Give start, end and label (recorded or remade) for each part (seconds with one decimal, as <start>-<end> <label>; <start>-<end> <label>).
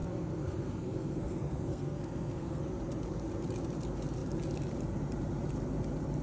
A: 0.0-2.6 remade; 2.6-6.2 recorded